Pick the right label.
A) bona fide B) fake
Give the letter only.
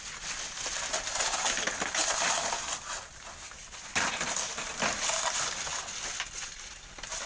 A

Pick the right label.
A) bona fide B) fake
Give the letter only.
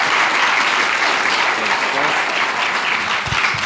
A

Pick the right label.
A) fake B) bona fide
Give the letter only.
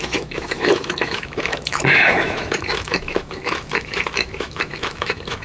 A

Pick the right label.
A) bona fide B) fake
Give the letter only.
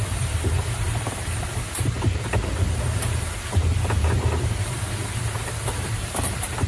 B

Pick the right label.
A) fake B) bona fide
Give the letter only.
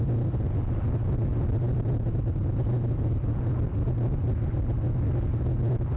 B